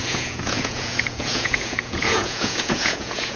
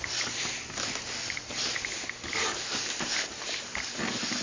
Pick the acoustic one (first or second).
second